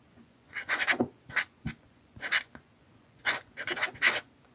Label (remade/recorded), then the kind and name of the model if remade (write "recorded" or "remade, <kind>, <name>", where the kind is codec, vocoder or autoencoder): remade, vocoder, Vocos